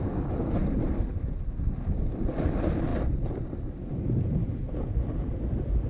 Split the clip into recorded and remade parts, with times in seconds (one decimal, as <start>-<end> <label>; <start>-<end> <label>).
0.0-0.6 recorded; 0.6-1.8 remade; 1.8-5.9 recorded